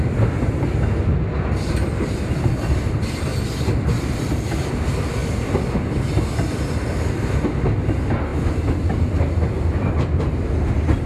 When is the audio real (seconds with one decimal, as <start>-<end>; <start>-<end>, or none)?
0.0-8.3; 10.2-11.1